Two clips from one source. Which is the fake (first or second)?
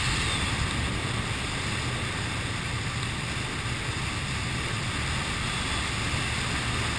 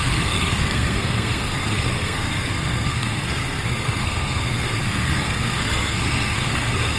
second